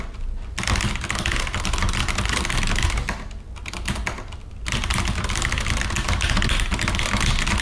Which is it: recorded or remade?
recorded